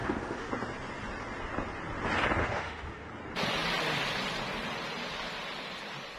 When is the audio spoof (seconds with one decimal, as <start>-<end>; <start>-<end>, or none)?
0.0-0.5; 2.4-3.1